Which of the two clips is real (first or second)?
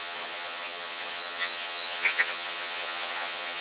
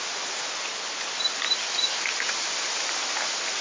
second